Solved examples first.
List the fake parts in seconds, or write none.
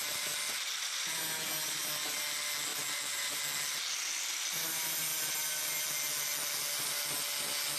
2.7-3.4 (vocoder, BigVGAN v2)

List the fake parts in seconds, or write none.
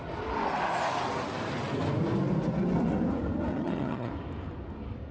3.5-4.1 (vocoder, HiFi-GAN)